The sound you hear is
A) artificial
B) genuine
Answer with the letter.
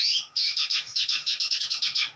A